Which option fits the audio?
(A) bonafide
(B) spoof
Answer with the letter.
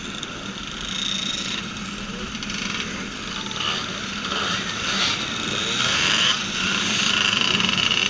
B